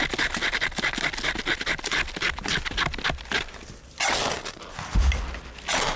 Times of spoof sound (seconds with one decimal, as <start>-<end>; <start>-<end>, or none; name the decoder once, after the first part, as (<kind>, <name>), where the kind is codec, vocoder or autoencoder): none